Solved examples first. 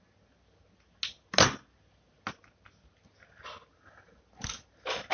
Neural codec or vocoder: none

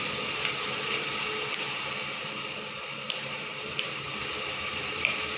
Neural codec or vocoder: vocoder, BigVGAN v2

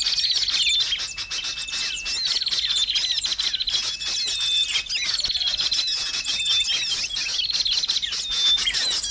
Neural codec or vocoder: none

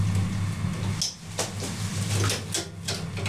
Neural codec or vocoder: none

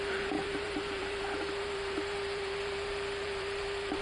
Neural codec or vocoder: vocoder, BigVGAN v2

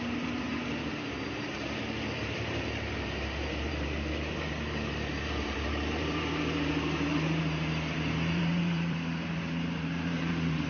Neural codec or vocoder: vocoder, BigVGAN v2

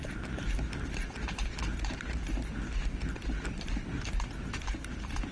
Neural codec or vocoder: none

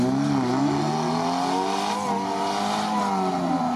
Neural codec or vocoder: none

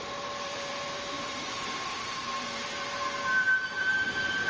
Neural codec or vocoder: vocoder, BigVGAN v2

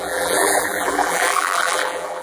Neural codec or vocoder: vocoder, BigVGAN v2